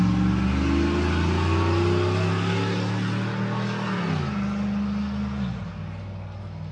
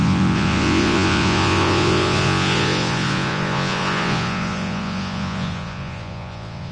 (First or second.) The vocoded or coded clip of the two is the second